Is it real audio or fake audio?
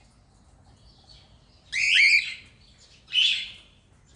real